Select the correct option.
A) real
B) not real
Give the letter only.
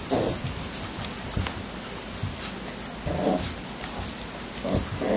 A